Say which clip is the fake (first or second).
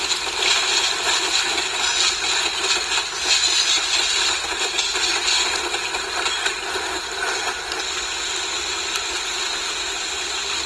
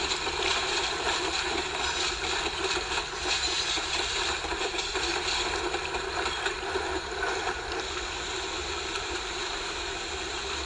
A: second